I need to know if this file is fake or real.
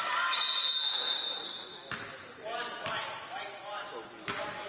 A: real